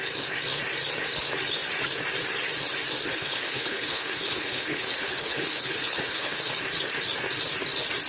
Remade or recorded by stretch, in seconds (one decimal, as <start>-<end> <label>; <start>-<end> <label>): 0.0-3.1 recorded; 3.1-6.5 remade; 6.5-8.1 recorded

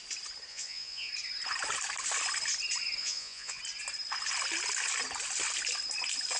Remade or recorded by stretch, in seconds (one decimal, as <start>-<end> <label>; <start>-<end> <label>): 0.0-0.5 recorded; 0.5-1.1 remade; 1.1-3.0 recorded; 3.0-3.6 remade; 3.6-6.4 recorded

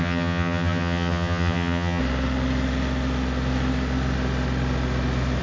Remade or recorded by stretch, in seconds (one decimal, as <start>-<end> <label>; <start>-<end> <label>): 0.0-2.0 remade; 2.0-5.4 recorded

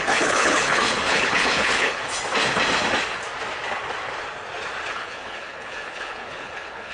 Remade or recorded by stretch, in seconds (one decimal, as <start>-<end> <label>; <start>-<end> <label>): 0.0-2.0 remade; 2.0-4.9 recorded; 4.9-6.9 remade

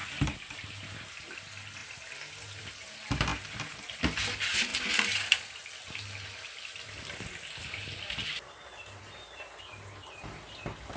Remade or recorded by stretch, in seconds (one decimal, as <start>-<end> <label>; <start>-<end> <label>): 0.0-11.0 recorded